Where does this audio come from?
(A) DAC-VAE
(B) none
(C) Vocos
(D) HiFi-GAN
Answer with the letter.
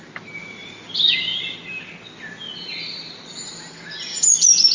B